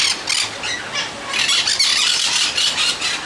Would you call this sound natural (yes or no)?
yes